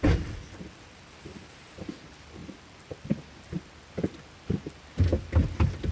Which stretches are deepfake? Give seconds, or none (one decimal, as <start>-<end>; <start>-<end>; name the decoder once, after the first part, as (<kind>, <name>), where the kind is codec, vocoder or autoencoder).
none